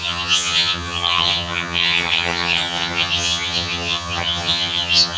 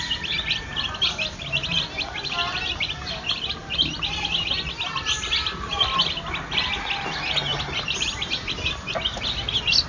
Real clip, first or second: second